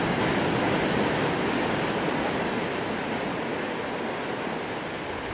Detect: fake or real real